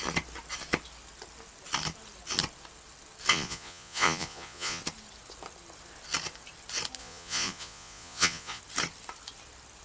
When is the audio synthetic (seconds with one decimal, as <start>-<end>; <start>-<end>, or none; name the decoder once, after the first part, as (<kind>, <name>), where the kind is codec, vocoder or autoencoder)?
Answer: 3.3-4.8 (vocoder, Vocos); 7.0-8.6